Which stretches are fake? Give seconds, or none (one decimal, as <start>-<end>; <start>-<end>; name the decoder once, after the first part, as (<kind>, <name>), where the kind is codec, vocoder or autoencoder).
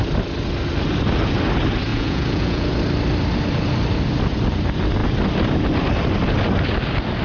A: 1.9-2.7 (vocoder, Vocos)